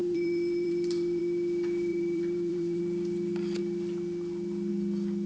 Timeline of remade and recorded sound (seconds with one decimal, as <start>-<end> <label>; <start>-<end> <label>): 0.0-1.2 remade; 1.2-1.9 recorded; 1.9-2.8 remade; 2.8-5.3 recorded